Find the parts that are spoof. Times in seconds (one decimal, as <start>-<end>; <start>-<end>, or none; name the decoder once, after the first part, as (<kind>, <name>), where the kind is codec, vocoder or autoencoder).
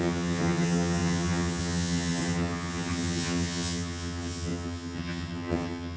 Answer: 0.0-6.0 (vocoder, HiFi-GAN)